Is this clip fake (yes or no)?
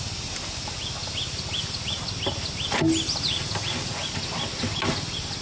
no